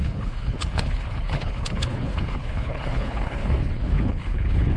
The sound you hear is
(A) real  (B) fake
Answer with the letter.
B